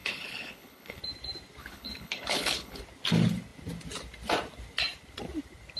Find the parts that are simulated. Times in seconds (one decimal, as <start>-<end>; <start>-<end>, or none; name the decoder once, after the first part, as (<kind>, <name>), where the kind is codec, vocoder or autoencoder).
0.0-1.0 (codec, HILCodec); 1.6-2.8